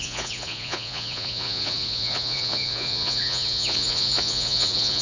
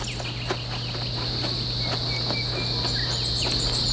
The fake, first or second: first